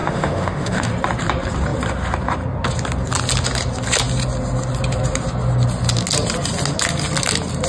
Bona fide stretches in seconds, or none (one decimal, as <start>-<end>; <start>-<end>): 0.9-7.7